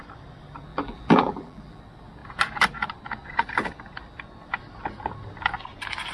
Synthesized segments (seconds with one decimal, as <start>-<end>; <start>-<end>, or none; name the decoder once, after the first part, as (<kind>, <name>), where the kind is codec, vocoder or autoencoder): 0.7-1.8 (vocoder, BigVGAN v2)